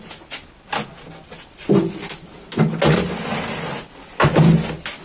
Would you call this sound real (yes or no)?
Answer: yes